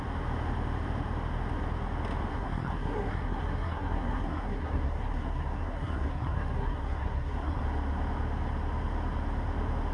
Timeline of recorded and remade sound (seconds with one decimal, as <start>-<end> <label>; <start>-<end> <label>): 0.0-2.3 recorded; 2.3-7.6 remade; 7.6-9.9 recorded